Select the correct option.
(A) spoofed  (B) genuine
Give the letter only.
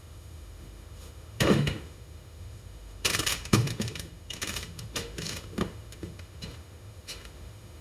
A